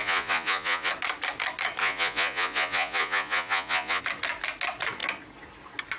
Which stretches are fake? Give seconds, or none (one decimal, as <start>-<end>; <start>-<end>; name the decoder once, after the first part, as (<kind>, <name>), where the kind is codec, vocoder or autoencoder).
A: 0.0-0.9 (vocoder, Vocos); 1.8-4.0